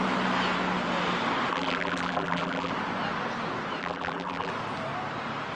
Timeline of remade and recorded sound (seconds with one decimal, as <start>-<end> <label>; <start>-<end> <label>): 0.0-1.5 recorded; 1.5-2.7 remade; 2.7-3.8 recorded; 3.8-4.5 remade; 4.5-5.6 recorded